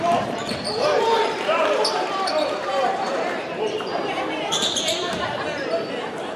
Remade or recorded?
remade